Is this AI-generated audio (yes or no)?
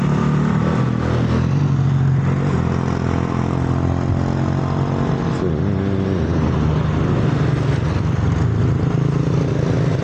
no